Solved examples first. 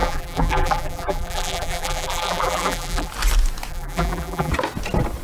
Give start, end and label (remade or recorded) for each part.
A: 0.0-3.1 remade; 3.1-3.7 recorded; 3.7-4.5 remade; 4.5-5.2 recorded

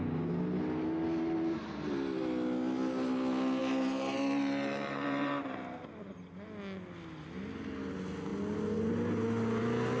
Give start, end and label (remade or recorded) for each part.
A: 0.0-3.6 recorded; 3.6-5.4 remade; 5.4-10.0 recorded

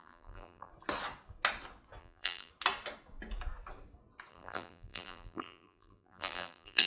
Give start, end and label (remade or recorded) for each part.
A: 0.0-0.7 remade; 0.7-2.0 recorded; 2.0-2.5 remade; 2.5-4.3 recorded; 4.3-6.9 remade

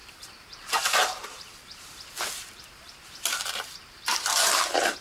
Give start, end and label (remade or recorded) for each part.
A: 0.0-5.0 remade

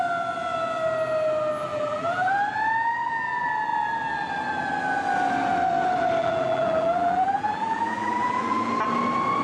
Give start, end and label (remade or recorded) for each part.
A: 0.0-1.7 recorded; 1.7-2.3 remade; 2.3-6.2 recorded; 6.2-8.7 remade; 8.7-9.4 recorded

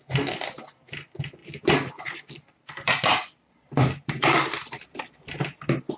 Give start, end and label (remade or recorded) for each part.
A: 0.0-1.4 recorded; 1.4-5.0 remade; 5.0-6.0 recorded